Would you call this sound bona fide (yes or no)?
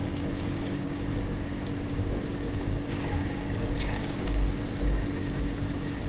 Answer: no